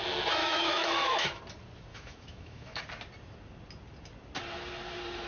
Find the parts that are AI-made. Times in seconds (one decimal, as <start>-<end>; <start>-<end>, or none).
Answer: 0.4-1.4; 1.9-2.8

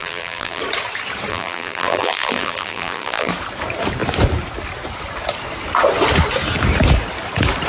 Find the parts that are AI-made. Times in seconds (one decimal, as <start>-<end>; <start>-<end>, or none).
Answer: 0.0-0.6; 1.3-3.3